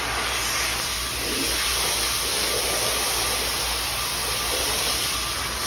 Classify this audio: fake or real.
real